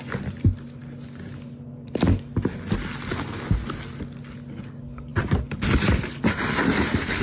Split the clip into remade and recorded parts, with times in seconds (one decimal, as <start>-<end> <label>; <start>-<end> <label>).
0.0-5.1 recorded; 5.1-7.2 remade